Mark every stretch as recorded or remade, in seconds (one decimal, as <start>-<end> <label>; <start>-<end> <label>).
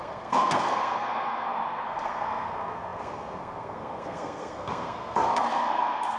0.0-6.2 remade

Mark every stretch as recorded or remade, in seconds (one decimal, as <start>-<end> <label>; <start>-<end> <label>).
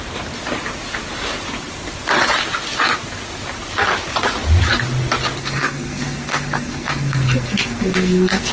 0.0-5.4 recorded; 5.4-8.5 remade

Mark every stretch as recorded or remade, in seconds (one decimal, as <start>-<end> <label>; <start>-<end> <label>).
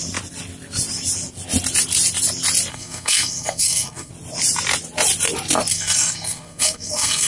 0.0-2.7 recorded; 2.7-4.1 remade; 4.1-5.7 recorded; 5.7-7.3 remade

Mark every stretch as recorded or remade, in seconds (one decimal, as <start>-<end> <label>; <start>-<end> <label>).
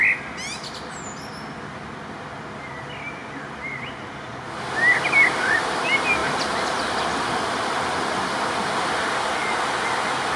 0.0-10.4 recorded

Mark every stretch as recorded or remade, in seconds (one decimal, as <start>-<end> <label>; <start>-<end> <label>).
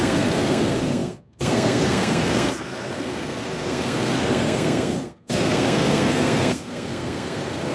0.0-7.7 remade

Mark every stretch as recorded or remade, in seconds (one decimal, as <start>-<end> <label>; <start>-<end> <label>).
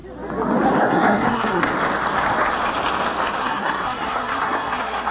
0.0-0.8 recorded; 0.8-1.7 remade; 1.7-3.4 recorded; 3.4-5.1 remade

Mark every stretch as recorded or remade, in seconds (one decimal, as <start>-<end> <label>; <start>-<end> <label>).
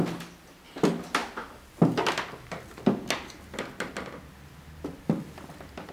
0.0-5.9 recorded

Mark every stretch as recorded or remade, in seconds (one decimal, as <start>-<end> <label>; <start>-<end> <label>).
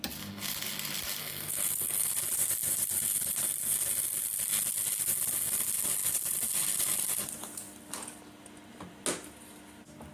0.0-1.2 recorded; 1.2-2.1 remade; 2.1-10.1 recorded